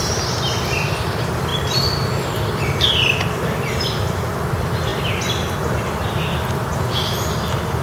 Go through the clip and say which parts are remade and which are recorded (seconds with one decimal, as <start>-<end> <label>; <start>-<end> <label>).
0.0-7.8 remade